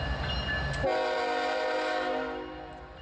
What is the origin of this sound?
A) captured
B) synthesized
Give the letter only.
A